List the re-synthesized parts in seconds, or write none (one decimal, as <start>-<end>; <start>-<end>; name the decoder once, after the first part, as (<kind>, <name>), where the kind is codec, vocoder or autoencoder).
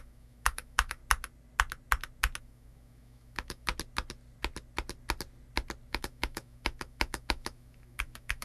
0.0-1.0 (autoencoder, DAC-VAE); 2.4-3.7; 5.9-8.4